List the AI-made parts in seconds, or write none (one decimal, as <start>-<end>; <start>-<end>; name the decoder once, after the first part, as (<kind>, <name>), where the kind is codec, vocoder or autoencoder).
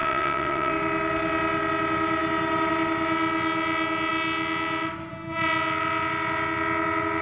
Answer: 0.0-0.7 (vocoder, WaveNeXt)